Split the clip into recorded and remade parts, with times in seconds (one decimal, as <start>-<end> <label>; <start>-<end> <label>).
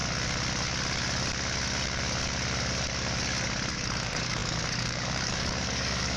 0.0-3.7 recorded; 3.7-6.2 remade